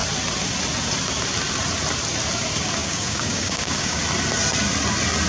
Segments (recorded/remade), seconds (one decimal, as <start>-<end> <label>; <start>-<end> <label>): 0.0-2.8 recorded; 2.8-4.0 remade; 4.0-5.3 recorded